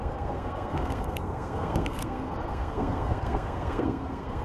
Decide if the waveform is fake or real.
fake